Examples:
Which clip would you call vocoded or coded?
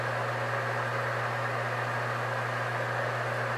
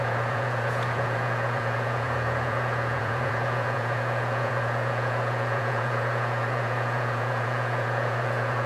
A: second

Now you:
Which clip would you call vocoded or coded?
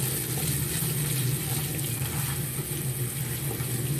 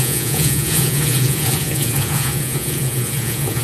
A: second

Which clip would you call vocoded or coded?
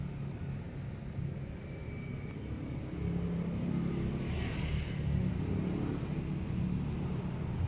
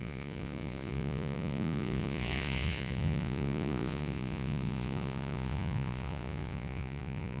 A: second